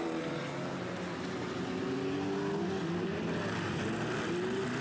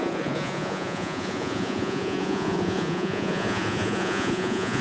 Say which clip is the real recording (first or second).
first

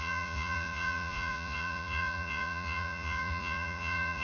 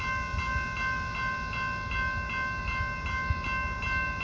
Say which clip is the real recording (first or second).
second